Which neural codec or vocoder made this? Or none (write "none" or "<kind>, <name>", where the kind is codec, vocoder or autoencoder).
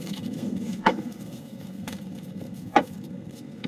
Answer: codec, SNAC